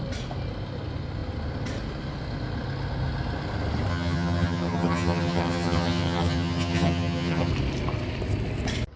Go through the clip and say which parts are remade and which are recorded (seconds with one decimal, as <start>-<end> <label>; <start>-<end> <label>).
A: 0.0-3.9 recorded; 3.9-7.5 remade; 7.5-9.0 recorded